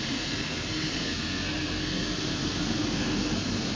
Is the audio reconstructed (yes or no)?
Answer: yes